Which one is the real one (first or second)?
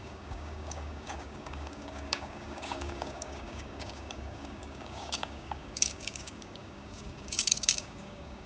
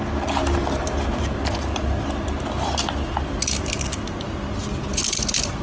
second